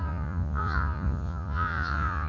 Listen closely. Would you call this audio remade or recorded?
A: remade